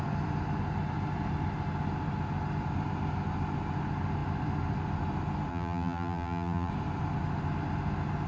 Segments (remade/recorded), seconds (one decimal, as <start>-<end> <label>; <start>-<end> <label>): 0.0-5.5 recorded; 5.5-6.7 remade; 6.7-8.3 recorded